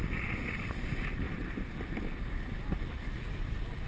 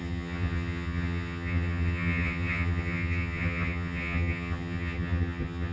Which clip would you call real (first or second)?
first